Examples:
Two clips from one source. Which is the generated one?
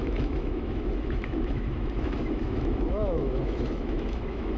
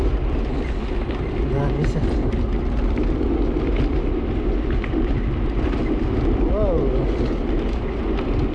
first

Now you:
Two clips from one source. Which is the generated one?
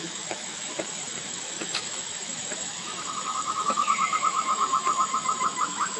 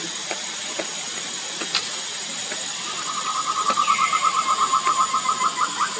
first